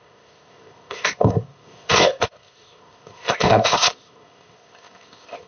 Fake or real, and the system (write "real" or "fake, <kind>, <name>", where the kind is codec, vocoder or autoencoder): fake, codec, ZipCodec